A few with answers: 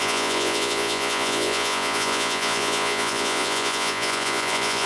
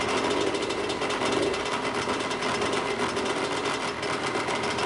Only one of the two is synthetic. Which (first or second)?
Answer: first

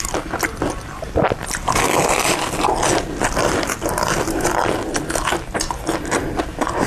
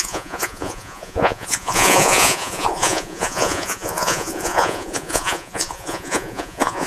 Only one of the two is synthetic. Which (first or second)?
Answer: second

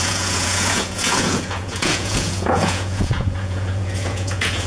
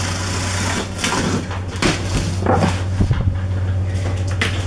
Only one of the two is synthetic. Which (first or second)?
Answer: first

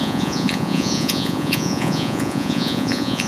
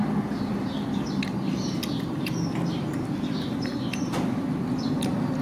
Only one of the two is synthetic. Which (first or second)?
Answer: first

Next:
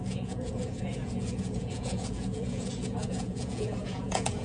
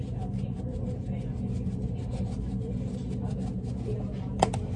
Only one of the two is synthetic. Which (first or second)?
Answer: first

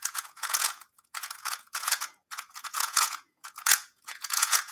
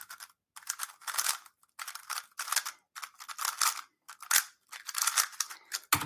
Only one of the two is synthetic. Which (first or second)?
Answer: first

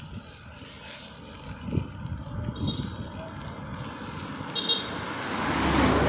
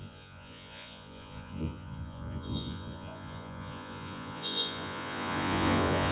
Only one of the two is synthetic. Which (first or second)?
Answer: second